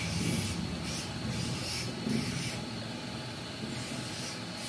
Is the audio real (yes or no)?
yes